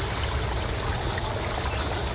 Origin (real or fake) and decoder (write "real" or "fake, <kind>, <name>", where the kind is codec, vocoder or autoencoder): real